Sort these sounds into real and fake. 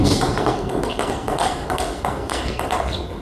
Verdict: fake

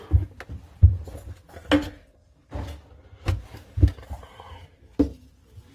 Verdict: real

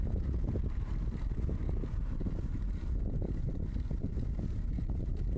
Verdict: real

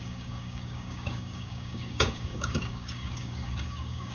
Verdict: fake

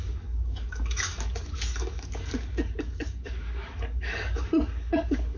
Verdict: fake